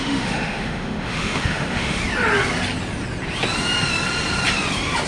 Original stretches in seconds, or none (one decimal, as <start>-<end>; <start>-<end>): 2.0-5.1